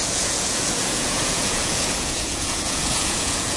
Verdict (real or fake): fake